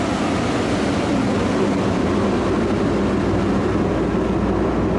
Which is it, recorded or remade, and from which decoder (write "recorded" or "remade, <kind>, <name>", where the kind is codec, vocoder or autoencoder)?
recorded